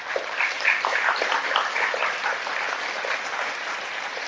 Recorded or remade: recorded